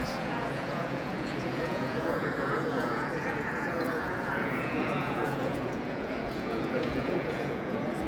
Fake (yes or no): yes